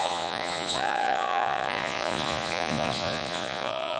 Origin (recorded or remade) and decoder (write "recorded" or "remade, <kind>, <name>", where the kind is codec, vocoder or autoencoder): remade, vocoder, Vocos